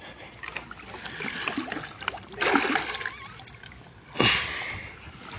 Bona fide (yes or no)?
yes